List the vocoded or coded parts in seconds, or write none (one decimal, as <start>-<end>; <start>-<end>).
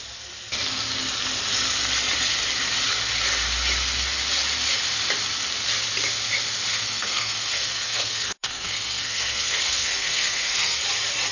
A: 6.7-10.8